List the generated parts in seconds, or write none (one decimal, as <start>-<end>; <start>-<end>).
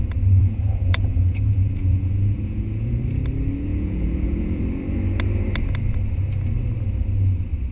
0.4-3.0; 3.7-4.6